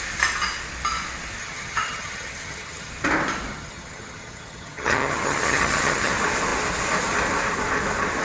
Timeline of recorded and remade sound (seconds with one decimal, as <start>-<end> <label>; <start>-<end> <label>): 0.0-1.4 recorded; 1.4-2.9 remade; 2.9-3.5 recorded; 3.5-6.1 remade; 6.1-8.2 recorded